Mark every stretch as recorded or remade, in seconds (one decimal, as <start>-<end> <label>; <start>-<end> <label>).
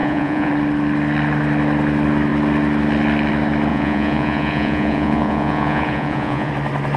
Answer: 0.0-0.5 remade; 0.5-3.7 recorded; 3.7-6.5 remade; 6.5-7.0 recorded